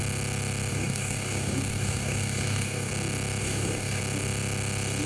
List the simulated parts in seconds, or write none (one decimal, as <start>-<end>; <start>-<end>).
0.7-2.9; 3.4-4.0